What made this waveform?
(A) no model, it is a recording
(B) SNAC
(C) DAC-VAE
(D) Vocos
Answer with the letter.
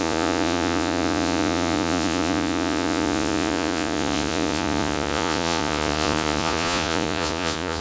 D